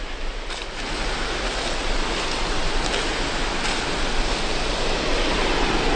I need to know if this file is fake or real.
real